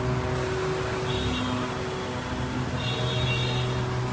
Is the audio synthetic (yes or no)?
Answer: no